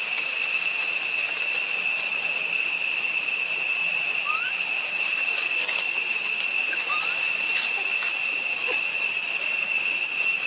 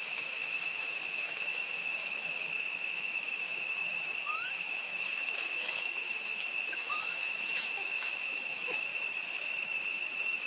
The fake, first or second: second